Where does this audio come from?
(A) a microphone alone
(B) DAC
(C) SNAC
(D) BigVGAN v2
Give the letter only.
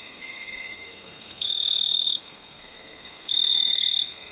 C